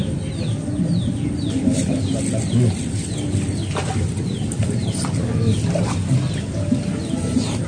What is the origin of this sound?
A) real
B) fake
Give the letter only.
A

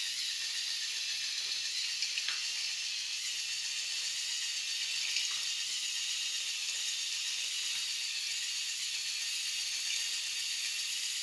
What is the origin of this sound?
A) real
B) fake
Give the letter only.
A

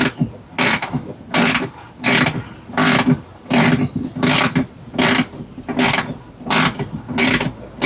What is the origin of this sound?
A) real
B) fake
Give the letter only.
A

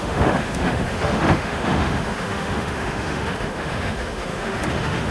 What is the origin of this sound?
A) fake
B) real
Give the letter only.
A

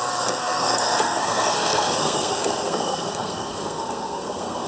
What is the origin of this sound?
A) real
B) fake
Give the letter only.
B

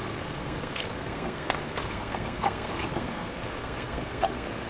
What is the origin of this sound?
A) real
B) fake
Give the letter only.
B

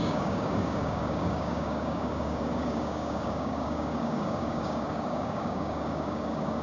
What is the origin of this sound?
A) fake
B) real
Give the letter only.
A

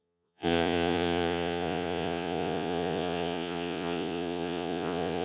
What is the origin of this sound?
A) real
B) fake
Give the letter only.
B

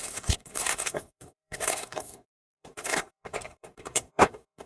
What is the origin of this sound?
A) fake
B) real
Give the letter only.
A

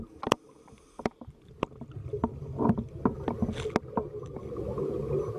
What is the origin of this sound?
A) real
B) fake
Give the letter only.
A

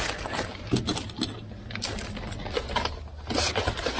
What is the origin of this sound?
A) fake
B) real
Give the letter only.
B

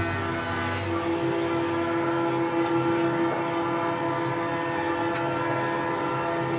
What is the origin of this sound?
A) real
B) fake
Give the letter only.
A